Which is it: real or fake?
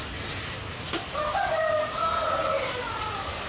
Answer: real